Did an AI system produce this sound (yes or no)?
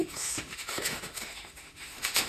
yes